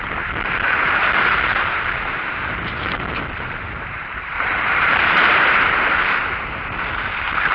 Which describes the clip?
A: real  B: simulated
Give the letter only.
B